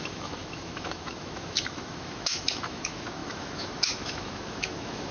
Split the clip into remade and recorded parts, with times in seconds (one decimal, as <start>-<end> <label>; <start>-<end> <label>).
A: 0.0-5.1 remade